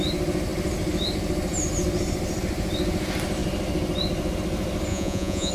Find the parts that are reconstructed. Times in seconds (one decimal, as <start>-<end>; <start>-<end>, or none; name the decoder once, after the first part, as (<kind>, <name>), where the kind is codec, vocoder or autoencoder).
4.9-5.5 (vocoder, Vocos)